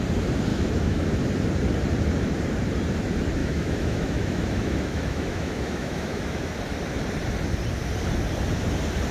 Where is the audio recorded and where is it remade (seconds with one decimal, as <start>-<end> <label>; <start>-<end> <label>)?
0.0-0.5 recorded; 0.5-1.1 remade; 1.1-3.4 recorded; 3.4-6.5 remade; 6.5-9.1 recorded